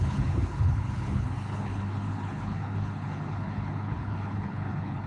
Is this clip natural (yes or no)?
no